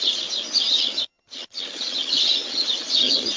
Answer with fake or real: fake